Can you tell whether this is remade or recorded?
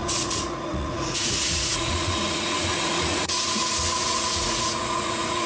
remade